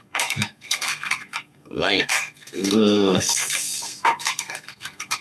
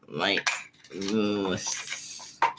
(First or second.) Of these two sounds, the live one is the second